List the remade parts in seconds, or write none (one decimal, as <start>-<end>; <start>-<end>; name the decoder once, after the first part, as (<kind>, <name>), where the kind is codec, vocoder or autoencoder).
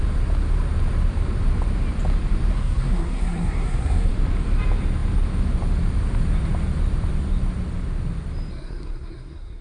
2.5-4.1 (codec, SNAC); 8.5-9.6